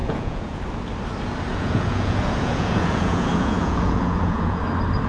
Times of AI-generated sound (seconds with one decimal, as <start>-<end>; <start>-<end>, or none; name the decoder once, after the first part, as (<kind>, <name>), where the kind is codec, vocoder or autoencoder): 0.0-0.6 (vocoder, Vocos); 1.5-4.6